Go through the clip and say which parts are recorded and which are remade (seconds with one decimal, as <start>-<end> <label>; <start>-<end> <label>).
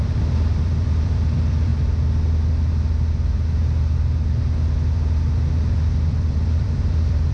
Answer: 0.0-1.7 remade; 1.7-6.1 recorded; 6.1-7.3 remade